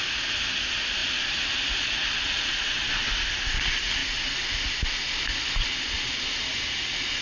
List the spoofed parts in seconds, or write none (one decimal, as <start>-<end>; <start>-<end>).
none